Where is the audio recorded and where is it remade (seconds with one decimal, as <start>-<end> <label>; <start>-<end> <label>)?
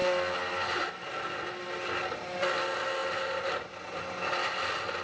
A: 0.0-5.0 recorded